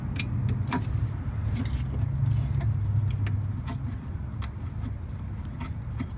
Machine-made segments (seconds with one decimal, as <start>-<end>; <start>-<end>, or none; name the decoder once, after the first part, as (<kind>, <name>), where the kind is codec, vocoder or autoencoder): none

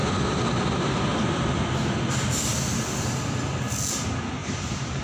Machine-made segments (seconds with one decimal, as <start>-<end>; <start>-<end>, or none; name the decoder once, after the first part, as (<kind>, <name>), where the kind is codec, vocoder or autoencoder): 4.4-5.0 (vocoder, BigVGAN v2)